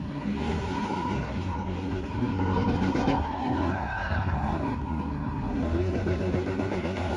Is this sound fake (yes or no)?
yes